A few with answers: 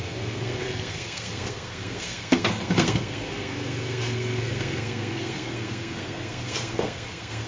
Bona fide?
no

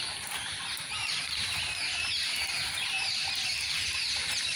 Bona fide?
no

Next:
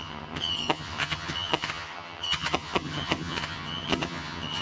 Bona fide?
no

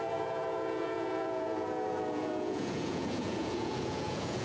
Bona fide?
no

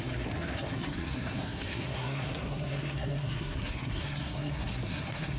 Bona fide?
no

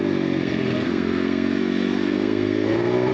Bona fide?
no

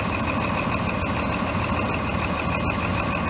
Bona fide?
yes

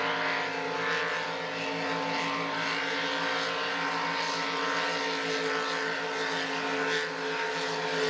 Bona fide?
yes